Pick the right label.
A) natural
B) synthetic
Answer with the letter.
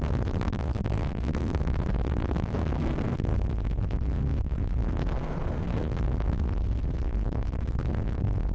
B